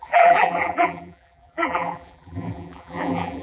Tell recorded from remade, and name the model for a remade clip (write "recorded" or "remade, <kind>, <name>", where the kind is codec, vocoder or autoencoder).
remade, vocoder, BigVGAN v2